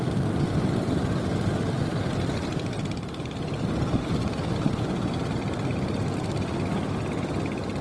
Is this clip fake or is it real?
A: real